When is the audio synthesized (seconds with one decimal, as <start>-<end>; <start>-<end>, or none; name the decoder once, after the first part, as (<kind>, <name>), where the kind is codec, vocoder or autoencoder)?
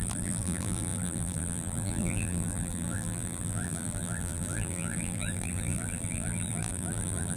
0.0-7.4 (vocoder, BigVGAN v2)